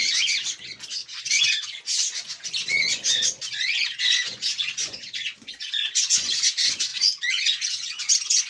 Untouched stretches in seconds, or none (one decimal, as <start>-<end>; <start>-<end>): none